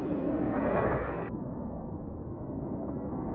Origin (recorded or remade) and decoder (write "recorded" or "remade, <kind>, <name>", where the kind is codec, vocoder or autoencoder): remade, codec, SNAC